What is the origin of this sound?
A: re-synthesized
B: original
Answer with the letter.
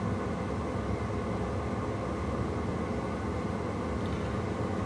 B